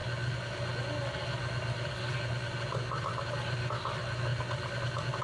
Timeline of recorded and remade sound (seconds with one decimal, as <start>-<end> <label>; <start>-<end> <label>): 0.0-5.2 recorded

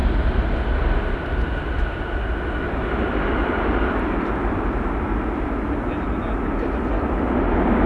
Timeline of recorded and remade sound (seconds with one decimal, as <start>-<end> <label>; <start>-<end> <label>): 0.0-7.9 recorded

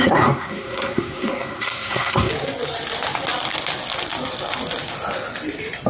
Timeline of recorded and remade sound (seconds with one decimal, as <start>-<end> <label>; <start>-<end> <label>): 0.0-2.3 remade; 2.3-5.9 recorded